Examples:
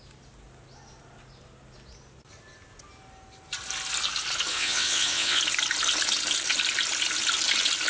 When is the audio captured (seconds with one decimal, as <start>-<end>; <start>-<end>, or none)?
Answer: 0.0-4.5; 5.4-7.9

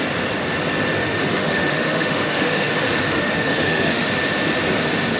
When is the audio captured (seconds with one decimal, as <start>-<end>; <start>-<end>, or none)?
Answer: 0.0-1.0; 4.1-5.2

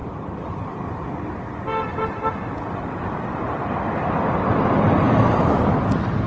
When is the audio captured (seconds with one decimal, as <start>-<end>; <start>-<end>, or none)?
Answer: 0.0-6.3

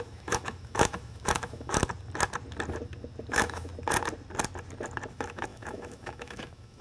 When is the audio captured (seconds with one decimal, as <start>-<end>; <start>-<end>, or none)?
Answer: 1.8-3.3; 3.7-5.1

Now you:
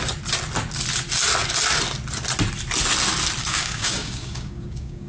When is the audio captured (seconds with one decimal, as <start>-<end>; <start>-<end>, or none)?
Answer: 0.0-3.4

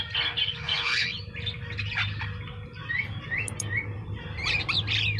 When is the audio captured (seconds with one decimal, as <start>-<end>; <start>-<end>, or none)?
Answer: 0.0-5.2

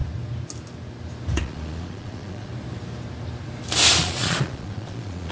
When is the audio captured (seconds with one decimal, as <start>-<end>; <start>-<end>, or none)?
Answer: 0.0-1.4; 2.5-4.0

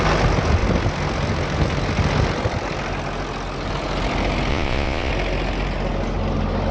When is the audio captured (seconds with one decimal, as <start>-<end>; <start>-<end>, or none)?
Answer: 0.0-4.5; 5.1-6.7